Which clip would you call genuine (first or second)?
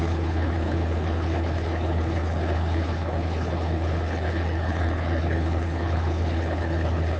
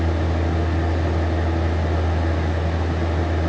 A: second